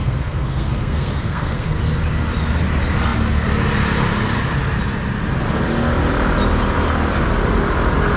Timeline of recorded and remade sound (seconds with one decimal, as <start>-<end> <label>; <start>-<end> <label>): 0.0-1.8 remade; 1.8-8.2 recorded

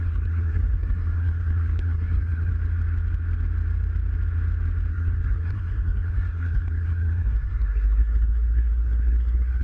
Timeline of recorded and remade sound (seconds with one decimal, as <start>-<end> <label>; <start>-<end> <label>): 0.0-2.5 remade; 2.5-4.9 recorded; 4.9-9.6 remade

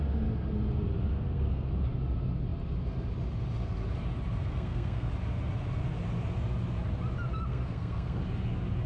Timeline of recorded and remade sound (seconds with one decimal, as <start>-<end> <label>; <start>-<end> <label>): 0.0-1.1 recorded; 1.1-1.7 remade; 1.7-4.4 recorded; 4.4-5.1 remade; 5.1-7.5 recorded; 7.5-8.2 remade; 8.2-8.9 recorded

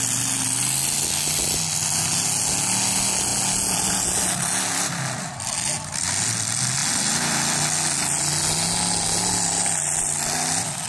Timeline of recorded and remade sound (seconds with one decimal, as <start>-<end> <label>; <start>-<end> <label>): 0.0-10.9 recorded

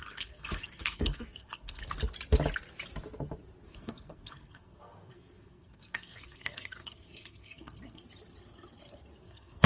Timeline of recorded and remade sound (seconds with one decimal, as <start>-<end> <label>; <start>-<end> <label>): 0.0-1.8 remade; 1.8-3.7 recorded; 3.7-8.0 remade; 8.0-9.2 recorded; 9.2-9.7 remade

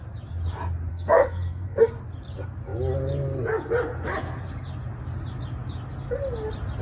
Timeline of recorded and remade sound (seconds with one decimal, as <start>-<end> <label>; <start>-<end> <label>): 0.0-0.9 recorded; 0.9-1.9 remade; 1.9-6.8 recorded

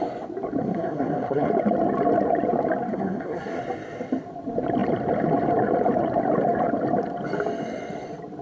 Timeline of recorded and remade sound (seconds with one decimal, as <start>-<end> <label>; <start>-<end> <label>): 0.0-0.6 recorded; 0.6-1.5 remade; 1.5-2.9 recorded; 2.9-3.6 remade; 3.6-8.4 recorded

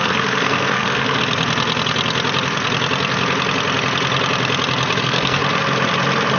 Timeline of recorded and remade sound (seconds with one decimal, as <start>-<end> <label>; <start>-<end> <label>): 0.0-1.2 remade; 1.2-5.0 recorded; 5.0-5.4 remade; 5.4-6.4 recorded